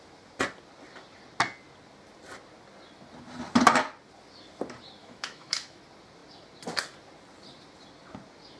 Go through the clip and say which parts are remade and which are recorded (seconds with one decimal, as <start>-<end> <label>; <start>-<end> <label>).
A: 0.0-5.0 recorded; 5.0-5.8 remade; 5.8-8.6 recorded